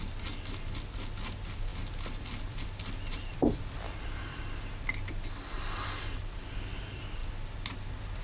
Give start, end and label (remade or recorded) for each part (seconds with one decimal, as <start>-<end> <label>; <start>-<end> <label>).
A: 0.0-8.2 recorded

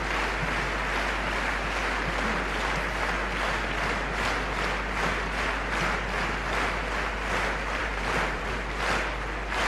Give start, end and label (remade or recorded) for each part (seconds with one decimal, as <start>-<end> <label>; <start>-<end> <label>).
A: 0.0-7.8 recorded; 7.8-8.5 remade; 8.5-9.7 recorded

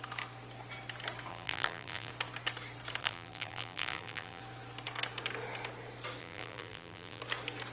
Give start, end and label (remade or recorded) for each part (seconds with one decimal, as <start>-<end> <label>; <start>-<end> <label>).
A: 0.0-1.3 recorded; 1.3-2.1 remade; 2.1-3.0 recorded; 3.0-4.4 remade; 4.4-6.2 recorded; 6.2-7.2 remade; 7.2-7.7 recorded

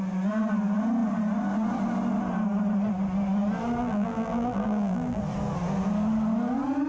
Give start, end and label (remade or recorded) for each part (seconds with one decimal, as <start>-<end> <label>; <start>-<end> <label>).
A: 0.0-3.8 recorded; 3.8-5.2 remade; 5.2-6.9 recorded

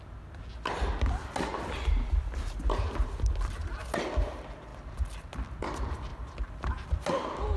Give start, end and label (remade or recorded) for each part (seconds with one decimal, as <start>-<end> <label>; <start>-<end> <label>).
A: 0.0-7.6 recorded

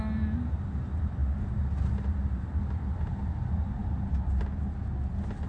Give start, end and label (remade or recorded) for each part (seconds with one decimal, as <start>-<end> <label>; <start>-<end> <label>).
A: 0.0-3.8 recorded; 3.8-4.4 remade; 4.4-5.5 recorded